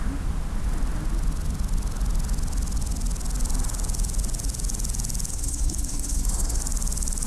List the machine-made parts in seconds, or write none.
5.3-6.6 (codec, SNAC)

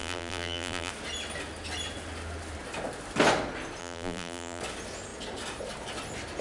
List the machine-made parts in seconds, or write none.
0.0-0.9 (vocoder, BigVGAN v2); 3.8-4.6

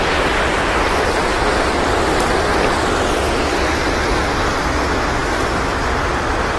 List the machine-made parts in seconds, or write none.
5.2-5.8 (autoencoder, DAC-VAE)

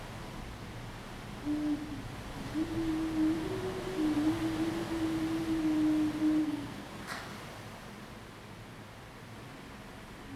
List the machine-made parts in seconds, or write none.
6.4-7.3 (codec, SNAC)

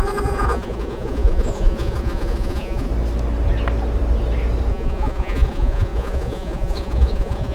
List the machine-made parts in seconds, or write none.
0.0-2.9 (vocoder, Vocos); 4.7-7.5

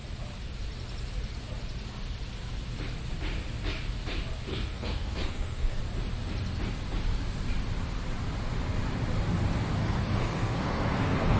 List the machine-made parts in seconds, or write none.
4.5-5.8 (codec, SNAC); 9.8-11.4